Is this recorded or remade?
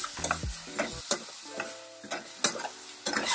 recorded